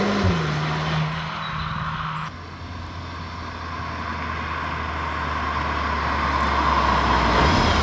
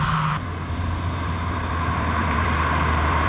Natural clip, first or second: first